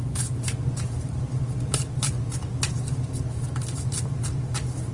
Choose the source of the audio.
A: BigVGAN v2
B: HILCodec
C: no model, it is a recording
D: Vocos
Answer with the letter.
C